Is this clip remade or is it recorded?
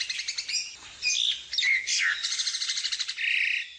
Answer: recorded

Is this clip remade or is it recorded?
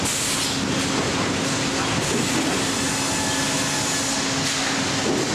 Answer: recorded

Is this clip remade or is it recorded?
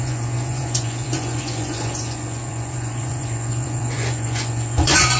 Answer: remade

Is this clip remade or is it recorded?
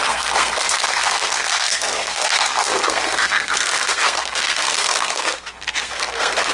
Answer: remade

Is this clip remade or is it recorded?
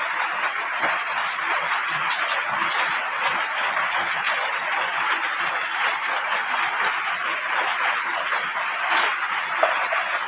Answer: recorded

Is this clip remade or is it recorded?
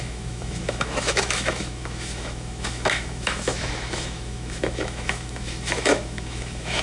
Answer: remade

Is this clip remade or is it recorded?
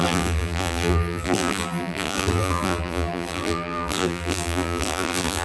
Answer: remade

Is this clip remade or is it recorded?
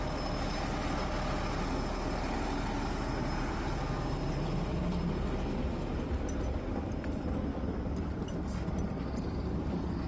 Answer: recorded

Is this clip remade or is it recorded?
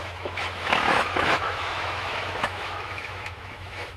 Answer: remade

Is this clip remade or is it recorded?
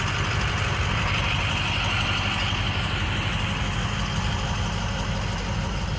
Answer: recorded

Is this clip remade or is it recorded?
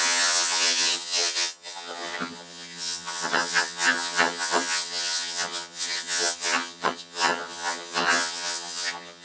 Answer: remade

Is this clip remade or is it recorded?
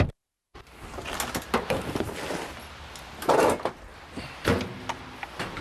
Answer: recorded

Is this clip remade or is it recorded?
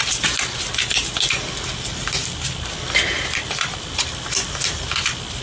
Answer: recorded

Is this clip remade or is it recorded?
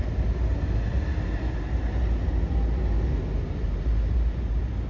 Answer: recorded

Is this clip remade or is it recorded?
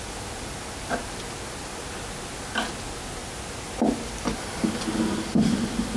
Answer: recorded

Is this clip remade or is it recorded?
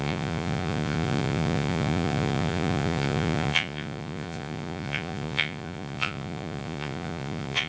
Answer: remade